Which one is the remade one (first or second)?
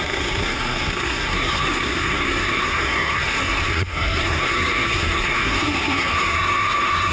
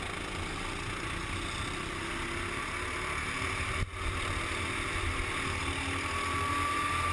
first